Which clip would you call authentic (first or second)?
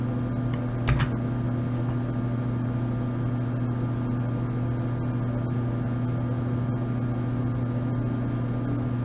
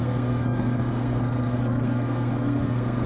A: first